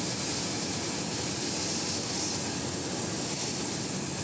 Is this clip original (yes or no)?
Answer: yes